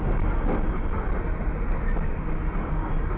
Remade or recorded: recorded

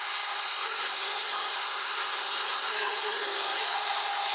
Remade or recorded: remade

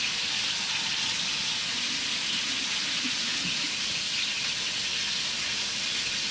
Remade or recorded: recorded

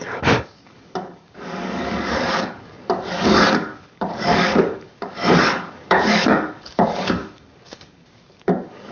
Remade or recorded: remade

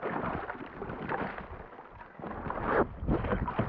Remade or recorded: recorded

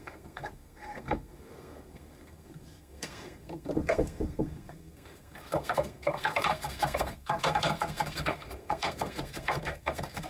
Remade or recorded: remade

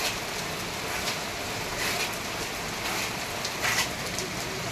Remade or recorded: recorded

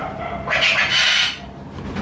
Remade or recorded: recorded